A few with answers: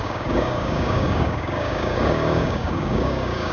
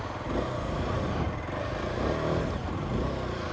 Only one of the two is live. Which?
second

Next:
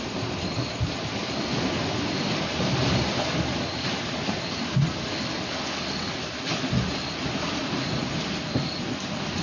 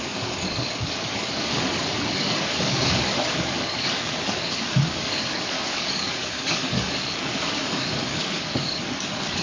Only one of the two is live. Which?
first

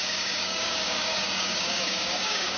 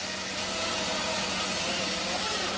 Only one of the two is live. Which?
second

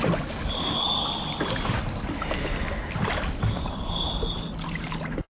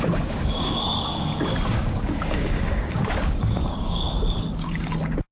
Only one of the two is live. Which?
first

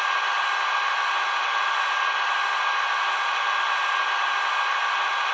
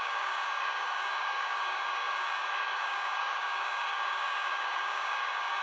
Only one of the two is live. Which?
first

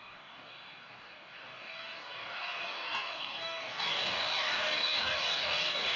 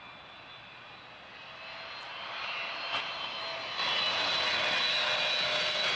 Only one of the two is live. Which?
second